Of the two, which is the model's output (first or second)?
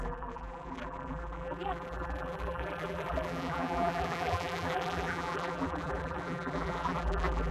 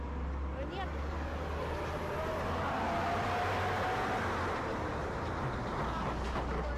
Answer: first